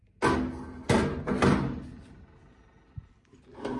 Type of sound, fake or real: real